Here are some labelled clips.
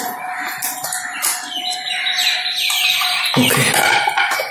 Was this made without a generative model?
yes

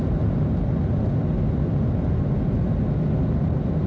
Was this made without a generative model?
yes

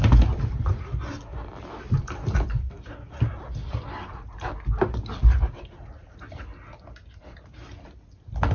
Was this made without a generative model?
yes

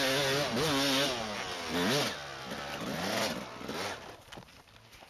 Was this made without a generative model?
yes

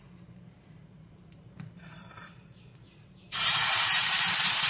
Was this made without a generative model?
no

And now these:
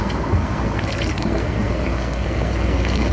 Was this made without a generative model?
no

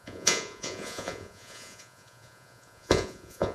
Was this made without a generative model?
no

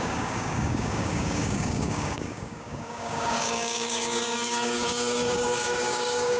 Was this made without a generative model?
no